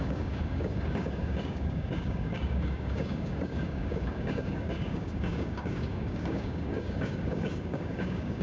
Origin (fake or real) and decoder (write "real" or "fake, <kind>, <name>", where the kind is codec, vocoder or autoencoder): fake, codec, DAC